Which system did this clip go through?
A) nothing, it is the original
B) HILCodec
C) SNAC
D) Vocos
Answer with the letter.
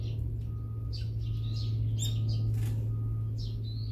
A